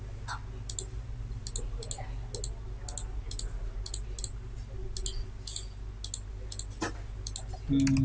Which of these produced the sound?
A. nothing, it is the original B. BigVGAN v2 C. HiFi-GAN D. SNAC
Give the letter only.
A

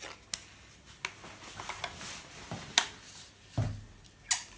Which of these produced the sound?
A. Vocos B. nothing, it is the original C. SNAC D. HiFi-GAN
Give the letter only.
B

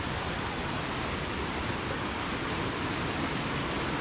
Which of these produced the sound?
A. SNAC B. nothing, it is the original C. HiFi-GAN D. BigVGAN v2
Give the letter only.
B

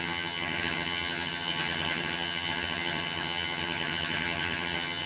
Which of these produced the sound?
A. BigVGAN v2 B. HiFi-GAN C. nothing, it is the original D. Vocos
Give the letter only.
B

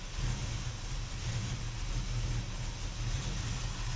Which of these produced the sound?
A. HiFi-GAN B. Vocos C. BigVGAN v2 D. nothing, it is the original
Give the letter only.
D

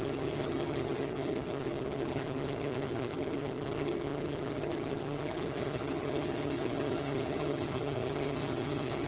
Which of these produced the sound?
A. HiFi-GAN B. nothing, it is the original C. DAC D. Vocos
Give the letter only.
A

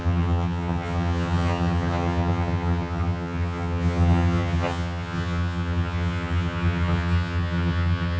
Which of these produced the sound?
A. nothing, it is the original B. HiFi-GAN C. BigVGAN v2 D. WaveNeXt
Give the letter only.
B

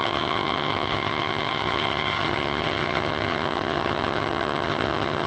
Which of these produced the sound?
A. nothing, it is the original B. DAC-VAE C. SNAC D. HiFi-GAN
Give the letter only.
D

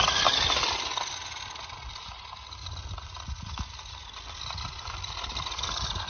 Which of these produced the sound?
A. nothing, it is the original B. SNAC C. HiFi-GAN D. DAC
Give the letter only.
A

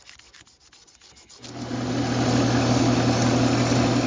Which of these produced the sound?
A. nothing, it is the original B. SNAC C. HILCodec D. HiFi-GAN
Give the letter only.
A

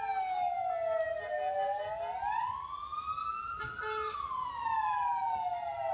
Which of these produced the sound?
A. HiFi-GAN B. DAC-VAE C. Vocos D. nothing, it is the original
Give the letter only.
D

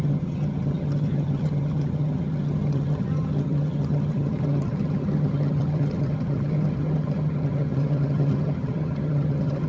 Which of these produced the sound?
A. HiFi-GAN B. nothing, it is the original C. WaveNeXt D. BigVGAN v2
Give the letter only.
A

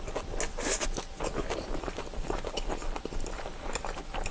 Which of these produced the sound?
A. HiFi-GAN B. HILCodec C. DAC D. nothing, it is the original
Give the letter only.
D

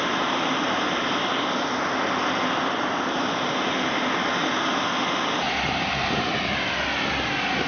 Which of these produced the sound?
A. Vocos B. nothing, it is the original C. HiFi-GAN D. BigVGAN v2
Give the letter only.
B